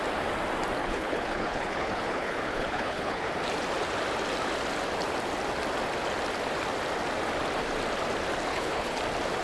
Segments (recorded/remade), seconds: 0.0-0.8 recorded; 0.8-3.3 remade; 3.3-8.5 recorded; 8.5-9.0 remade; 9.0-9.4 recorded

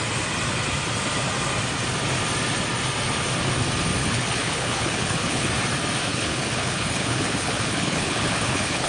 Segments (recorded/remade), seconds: 0.0-4.0 recorded; 4.0-5.5 remade; 5.5-6.1 recorded; 6.1-8.9 remade

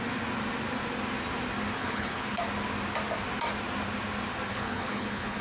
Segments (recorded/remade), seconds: 0.0-1.8 recorded; 1.8-2.4 remade; 2.4-4.5 recorded; 4.5-5.4 remade

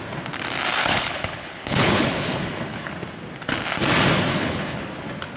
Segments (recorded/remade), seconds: 0.0-0.8 recorded; 0.8-2.9 remade; 2.9-4.3 recorded; 4.3-4.8 remade; 4.8-5.4 recorded

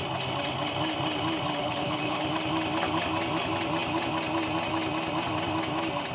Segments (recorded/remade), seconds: 0.0-1.6 recorded; 1.6-2.2 remade; 2.2-6.1 recorded

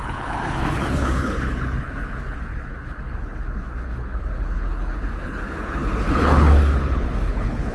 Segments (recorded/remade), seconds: 0.0-7.7 remade